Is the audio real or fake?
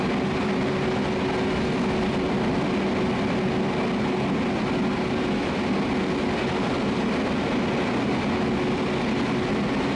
real